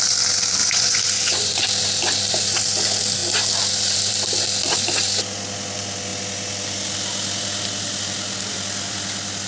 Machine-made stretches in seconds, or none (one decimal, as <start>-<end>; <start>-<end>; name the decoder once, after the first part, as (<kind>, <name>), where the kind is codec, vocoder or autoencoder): 0.6-1.6 (vocoder, Vocos)

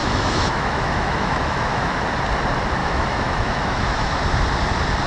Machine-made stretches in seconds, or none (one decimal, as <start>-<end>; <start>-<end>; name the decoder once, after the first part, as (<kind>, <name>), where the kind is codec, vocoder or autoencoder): 0.0-2.0 (autoencoder, DAC-VAE); 2.8-4.2

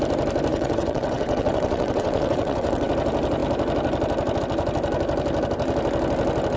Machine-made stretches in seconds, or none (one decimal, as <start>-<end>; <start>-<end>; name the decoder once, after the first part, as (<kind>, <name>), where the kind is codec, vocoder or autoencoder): 0.5-2.9 (vocoder, WaveNeXt)

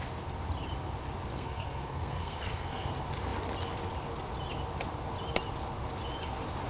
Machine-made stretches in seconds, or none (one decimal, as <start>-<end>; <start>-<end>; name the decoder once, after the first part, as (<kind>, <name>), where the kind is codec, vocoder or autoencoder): 1.3-2.9 (codec, SNAC)

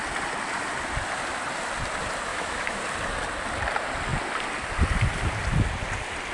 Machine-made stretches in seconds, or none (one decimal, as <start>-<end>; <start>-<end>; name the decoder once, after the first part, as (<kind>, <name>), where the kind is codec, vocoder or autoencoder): 2.3-2.8 (autoencoder, DAC-VAE)

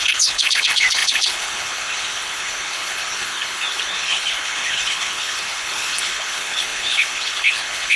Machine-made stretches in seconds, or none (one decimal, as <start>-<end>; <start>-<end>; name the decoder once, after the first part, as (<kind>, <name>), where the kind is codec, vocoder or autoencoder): 0.0-8.0 (codec, HILCodec)

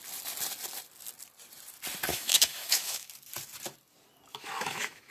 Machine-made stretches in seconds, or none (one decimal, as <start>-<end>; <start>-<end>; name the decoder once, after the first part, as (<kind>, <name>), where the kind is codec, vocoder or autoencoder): 2.1-3.1 (autoencoder, DAC-VAE); 4.3-5.1